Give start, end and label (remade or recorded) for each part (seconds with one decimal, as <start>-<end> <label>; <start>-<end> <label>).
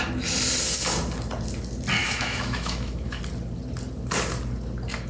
0.0-2.0 recorded; 2.0-3.2 remade; 3.2-5.1 recorded